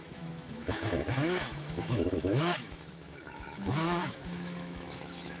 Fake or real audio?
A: fake